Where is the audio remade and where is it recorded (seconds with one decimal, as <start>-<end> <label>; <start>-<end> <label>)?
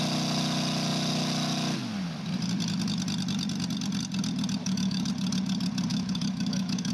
0.0-4.6 recorded; 4.6-5.1 remade; 5.1-5.9 recorded; 5.9-6.9 remade